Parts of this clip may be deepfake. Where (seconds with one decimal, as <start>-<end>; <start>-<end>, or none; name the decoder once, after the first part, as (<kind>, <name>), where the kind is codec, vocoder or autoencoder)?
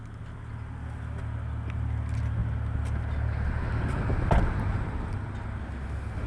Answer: none